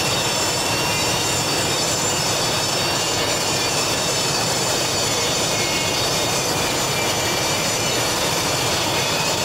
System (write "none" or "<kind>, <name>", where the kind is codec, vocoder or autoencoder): vocoder, BigVGAN v2